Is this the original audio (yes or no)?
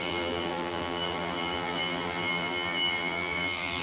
no